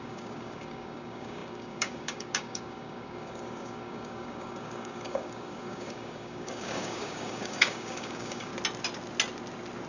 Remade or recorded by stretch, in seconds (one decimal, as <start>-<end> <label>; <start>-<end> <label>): 0.0-8.5 remade; 8.5-9.9 recorded